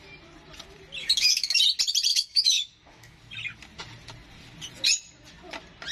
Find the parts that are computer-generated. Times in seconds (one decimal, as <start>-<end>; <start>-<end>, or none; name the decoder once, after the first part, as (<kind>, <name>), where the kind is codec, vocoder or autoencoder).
1.0-1.6 (autoencoder, DAC-VAE); 2.1-3.2